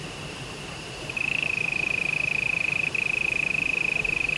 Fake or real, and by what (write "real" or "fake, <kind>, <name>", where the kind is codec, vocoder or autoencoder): real